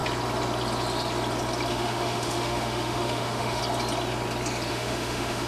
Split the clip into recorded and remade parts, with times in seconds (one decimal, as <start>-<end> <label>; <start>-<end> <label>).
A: 0.0-1.7 recorded; 1.7-3.6 remade; 3.6-4.7 recorded; 4.7-5.5 remade